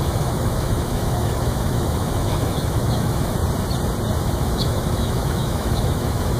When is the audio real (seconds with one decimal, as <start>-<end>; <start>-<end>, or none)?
3.4-4.2